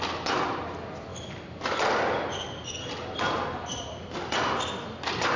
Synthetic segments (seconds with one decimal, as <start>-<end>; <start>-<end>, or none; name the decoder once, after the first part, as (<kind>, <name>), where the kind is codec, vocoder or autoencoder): none